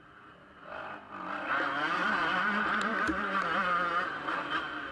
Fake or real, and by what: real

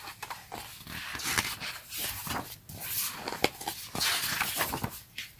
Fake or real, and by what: real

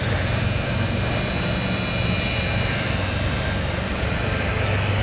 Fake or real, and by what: fake, vocoder, BigVGAN v2